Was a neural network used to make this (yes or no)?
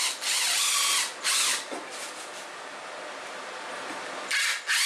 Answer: no